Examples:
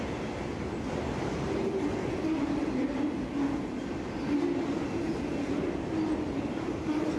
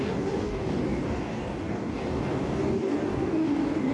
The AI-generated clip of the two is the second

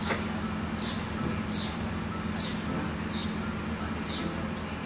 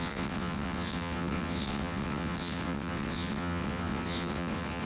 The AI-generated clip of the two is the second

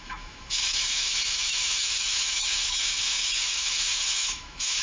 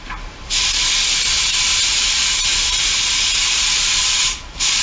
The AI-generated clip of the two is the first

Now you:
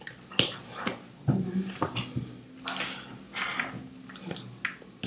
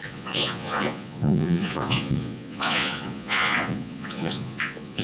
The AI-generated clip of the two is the second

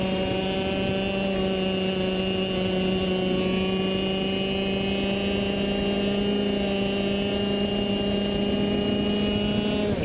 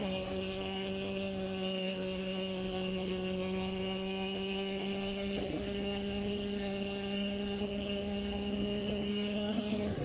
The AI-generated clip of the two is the second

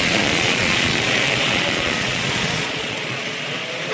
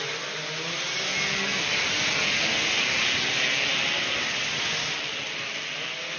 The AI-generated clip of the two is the first